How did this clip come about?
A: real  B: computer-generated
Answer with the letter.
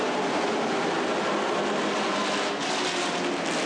A